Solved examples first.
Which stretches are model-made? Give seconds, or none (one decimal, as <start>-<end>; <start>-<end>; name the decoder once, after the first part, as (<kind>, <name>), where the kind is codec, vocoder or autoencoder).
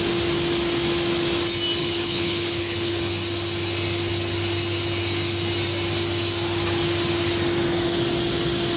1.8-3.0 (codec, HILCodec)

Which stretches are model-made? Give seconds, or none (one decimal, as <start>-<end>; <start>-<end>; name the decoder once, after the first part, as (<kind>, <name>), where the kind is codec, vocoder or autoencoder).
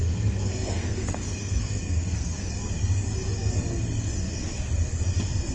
0.0-2.5 (codec, SNAC)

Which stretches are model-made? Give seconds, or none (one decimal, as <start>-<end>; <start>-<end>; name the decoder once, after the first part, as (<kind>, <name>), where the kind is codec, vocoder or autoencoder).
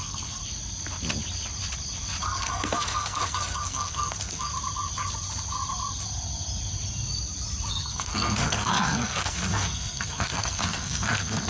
0.0-0.4 (codec, SNAC); 2.2-4.5; 7.7-11.5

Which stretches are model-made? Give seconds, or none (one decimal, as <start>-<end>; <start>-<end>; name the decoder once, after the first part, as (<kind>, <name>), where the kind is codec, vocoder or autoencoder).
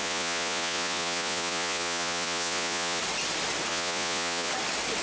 0.0-3.0 (vocoder, Vocos); 3.7-4.5